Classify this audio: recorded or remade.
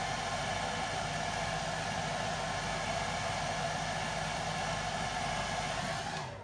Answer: recorded